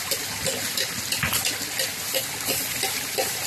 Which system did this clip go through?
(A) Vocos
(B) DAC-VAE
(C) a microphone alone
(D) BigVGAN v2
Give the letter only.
C